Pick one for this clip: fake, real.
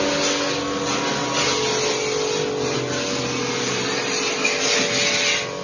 real